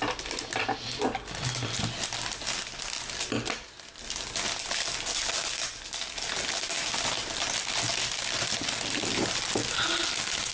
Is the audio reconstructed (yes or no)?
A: no